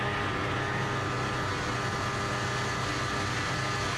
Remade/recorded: recorded